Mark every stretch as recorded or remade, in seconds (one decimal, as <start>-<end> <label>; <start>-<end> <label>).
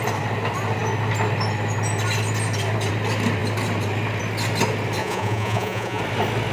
0.0-5.0 recorded; 5.0-6.0 remade; 6.0-6.5 recorded